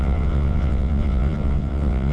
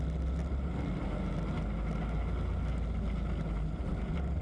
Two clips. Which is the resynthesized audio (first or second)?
first